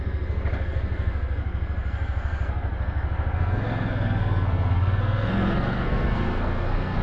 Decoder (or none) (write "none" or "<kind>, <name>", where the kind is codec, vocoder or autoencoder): codec, SNAC